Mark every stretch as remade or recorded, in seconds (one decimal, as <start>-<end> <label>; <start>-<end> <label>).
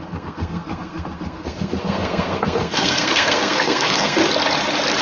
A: 0.0-4.2 remade; 4.2-5.0 recorded